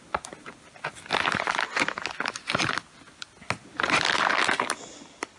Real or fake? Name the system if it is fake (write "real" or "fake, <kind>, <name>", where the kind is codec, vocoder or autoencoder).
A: real